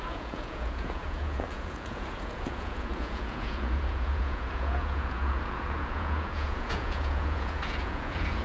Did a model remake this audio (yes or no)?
yes